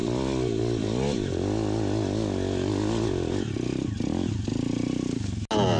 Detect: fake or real real